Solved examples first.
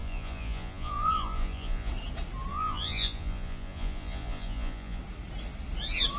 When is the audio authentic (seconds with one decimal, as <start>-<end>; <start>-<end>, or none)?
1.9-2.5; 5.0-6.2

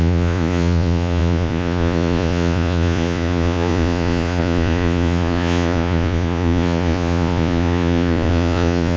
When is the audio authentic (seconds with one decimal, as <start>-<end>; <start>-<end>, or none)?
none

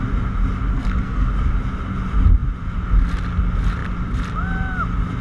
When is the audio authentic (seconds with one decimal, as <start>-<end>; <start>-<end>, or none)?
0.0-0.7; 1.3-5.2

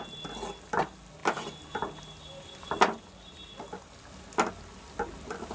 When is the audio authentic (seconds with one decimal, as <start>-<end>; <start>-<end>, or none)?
0.0-5.5

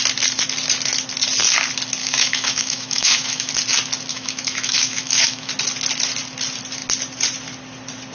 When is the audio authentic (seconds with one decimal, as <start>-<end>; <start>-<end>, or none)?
0.0-2.0; 3.5-4.1; 5.5-8.1

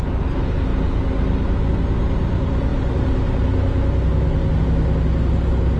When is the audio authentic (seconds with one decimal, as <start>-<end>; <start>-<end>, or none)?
0.0-5.8